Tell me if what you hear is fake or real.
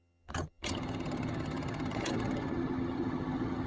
fake